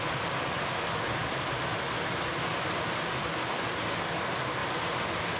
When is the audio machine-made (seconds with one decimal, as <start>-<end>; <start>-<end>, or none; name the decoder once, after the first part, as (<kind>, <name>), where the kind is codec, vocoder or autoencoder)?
none